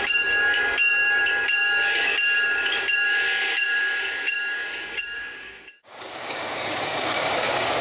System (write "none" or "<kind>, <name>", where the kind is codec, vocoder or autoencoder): codec, DAC